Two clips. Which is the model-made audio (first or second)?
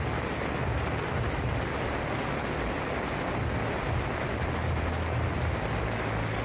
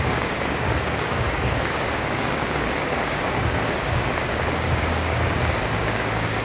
second